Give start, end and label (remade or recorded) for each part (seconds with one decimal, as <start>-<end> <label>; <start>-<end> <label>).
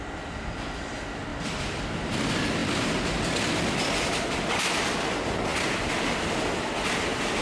0.0-7.4 recorded